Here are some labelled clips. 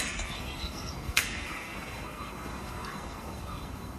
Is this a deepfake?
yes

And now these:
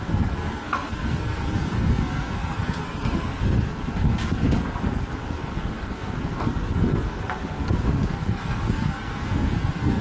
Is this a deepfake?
yes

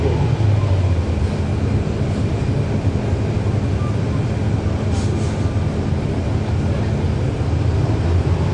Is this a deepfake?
no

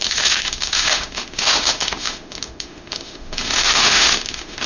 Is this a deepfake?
yes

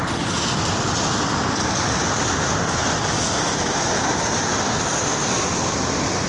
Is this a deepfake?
no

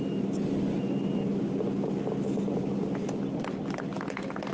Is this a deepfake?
no